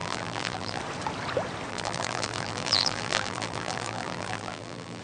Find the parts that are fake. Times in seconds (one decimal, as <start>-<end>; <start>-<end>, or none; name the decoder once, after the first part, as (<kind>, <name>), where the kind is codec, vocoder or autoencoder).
0.0-0.8 (vocoder, BigVGAN v2); 1.7-5.0